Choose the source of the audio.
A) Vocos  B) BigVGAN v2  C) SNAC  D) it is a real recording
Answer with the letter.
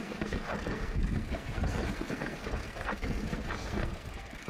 C